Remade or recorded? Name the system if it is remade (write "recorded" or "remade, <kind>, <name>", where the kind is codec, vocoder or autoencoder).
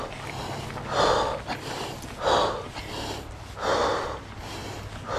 recorded